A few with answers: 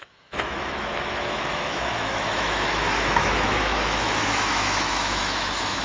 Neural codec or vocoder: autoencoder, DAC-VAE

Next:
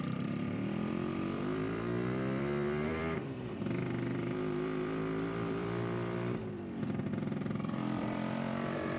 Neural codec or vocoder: vocoder, BigVGAN v2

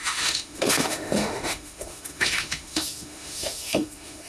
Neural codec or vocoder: autoencoder, DAC-VAE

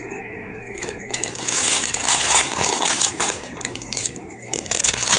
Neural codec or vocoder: codec, SNAC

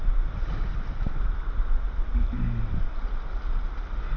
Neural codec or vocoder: none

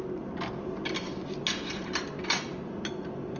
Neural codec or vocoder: none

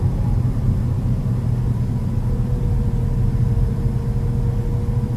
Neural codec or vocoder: none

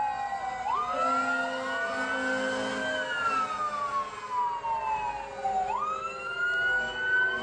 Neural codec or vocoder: none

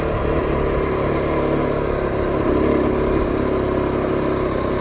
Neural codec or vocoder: none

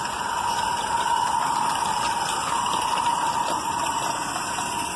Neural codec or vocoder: none